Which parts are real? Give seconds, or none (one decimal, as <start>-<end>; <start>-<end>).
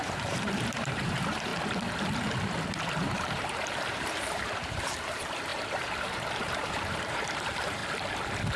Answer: 1.5-2.7; 7.8-8.6